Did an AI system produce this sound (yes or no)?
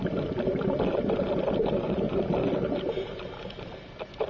yes